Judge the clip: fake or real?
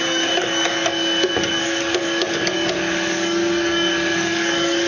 fake